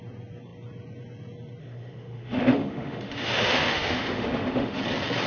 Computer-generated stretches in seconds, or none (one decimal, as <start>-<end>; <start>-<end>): 1.6-4.8